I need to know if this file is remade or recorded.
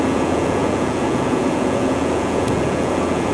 remade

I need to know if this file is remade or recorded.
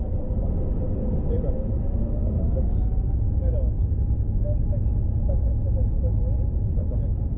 recorded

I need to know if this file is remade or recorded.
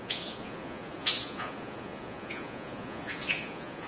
remade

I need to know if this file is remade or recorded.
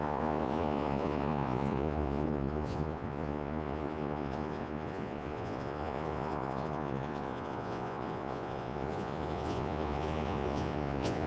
remade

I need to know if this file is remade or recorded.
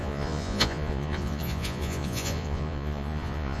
remade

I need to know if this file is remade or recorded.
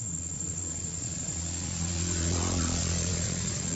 remade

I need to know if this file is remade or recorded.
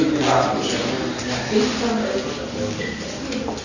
recorded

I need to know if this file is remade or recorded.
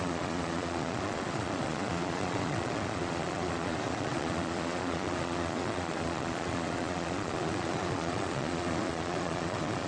remade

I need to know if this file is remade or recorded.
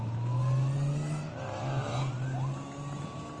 recorded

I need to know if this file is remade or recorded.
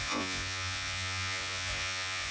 remade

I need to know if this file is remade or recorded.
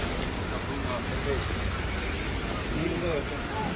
recorded